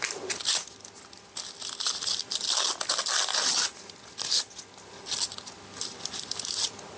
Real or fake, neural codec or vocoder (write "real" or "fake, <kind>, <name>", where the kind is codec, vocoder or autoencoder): real